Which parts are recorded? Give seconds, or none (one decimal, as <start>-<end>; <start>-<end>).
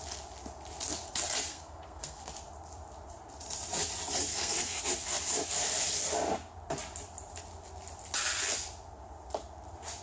0.0-1.5; 2.3-4.3; 4.8-10.0